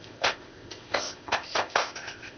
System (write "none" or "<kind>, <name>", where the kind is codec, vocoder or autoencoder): codec, ZipCodec